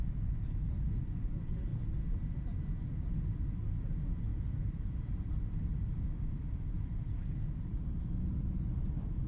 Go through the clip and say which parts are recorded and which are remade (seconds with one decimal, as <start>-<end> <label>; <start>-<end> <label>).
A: 0.0-1.7 recorded; 1.7-2.9 remade; 2.9-4.3 recorded; 4.3-8.1 remade; 8.1-9.3 recorded